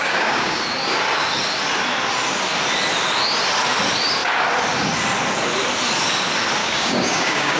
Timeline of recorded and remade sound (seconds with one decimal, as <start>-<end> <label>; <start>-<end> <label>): 0.0-0.6 remade; 0.6-6.6 recorded; 6.6-7.6 remade